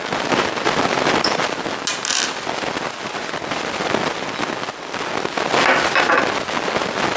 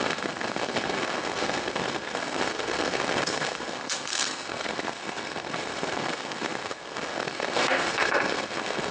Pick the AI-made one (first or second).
second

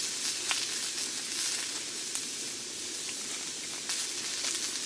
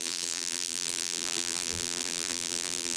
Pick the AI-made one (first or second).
second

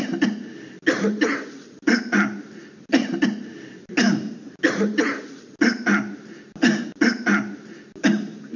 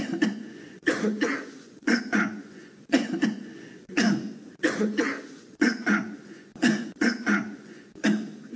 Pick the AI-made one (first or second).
second